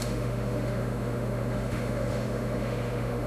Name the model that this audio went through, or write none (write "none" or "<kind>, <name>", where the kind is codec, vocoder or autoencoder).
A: autoencoder, DAC-VAE